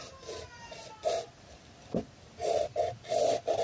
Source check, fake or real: real